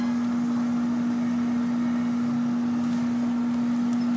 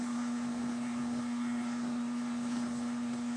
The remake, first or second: second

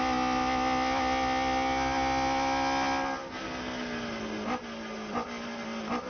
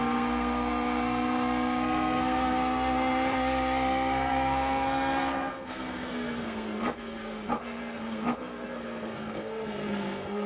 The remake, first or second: second